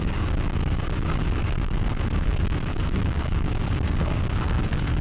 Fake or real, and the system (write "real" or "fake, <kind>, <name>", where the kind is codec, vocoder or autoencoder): fake, codec, DAC